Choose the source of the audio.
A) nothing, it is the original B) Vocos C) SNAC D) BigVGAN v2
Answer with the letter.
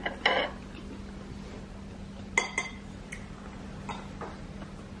A